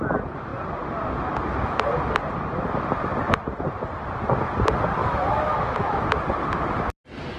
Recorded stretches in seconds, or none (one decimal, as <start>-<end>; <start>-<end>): 0.0-5.0; 6.0-7.4